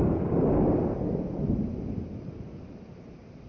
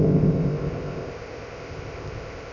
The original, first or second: first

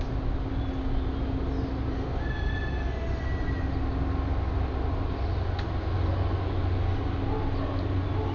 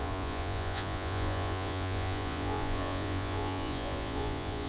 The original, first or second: first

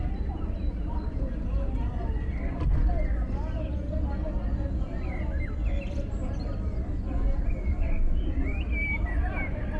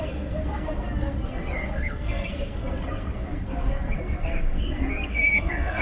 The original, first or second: first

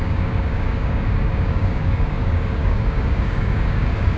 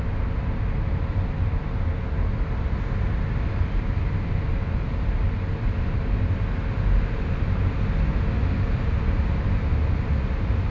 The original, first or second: second